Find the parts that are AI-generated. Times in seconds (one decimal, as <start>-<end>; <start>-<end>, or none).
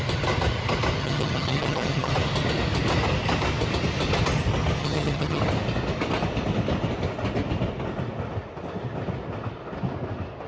1.0-2.1; 4.8-5.4